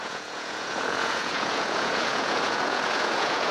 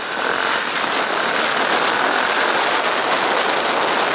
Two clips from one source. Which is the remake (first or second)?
first